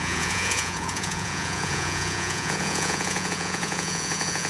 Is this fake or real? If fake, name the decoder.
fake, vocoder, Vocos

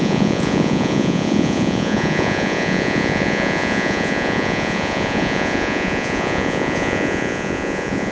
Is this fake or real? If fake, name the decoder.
fake, vocoder, Vocos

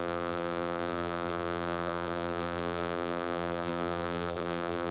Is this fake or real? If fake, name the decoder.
fake, vocoder, BigVGAN v2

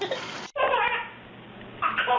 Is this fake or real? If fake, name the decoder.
real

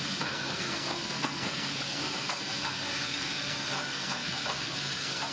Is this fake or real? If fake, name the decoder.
fake, codec, SNAC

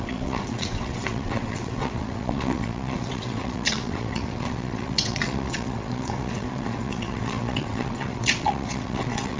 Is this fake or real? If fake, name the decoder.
fake, vocoder, WaveNeXt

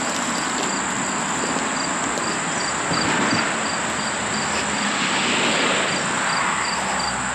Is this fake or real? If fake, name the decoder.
real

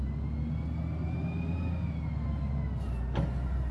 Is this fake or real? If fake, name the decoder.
real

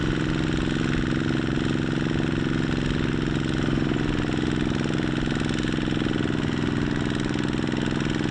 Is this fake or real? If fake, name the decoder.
real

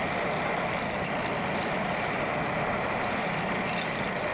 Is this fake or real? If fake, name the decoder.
real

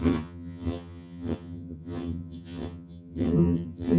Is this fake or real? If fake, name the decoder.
fake, vocoder, HiFi-GAN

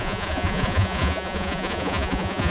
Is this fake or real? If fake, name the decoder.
fake, vocoder, Vocos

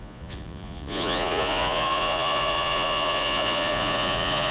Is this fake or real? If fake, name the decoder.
fake, vocoder, Vocos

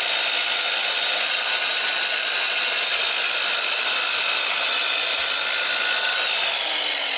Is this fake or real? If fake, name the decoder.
real